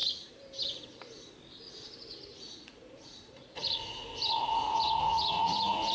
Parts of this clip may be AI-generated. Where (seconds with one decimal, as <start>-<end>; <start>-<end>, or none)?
2.3-5.9